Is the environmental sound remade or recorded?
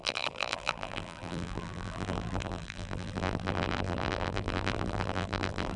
remade